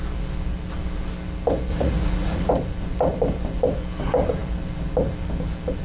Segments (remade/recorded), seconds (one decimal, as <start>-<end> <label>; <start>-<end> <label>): 0.0-1.7 recorded; 1.7-2.5 remade; 2.5-5.8 recorded